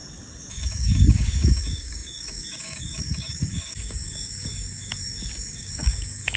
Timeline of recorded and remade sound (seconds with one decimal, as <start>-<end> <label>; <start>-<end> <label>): 0.0-0.5 recorded; 0.5-6.4 remade